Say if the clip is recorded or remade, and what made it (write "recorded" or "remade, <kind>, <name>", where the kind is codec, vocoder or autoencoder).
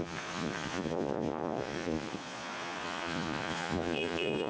remade, vocoder, Vocos